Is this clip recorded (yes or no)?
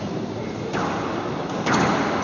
yes